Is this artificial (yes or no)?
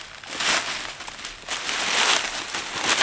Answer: no